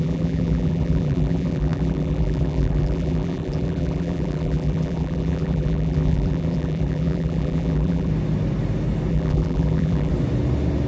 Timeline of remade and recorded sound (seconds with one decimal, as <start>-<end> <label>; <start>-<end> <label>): 0.0-8.1 remade; 8.1-9.1 recorded; 9.1-10.1 remade; 10.1-10.9 recorded